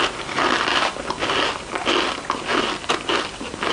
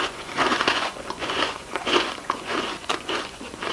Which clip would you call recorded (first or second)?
first